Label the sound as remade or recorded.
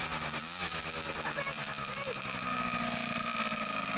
recorded